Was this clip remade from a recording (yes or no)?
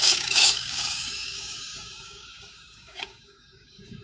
yes